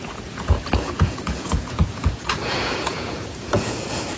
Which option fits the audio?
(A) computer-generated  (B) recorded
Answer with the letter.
A